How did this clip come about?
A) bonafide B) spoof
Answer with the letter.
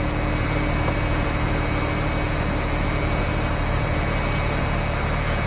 A